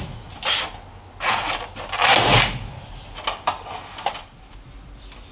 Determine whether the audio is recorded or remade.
recorded